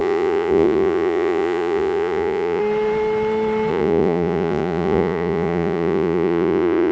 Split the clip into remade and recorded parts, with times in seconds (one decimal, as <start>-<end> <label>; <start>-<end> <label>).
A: 0.0-2.6 remade; 2.6-3.7 recorded; 3.7-6.9 remade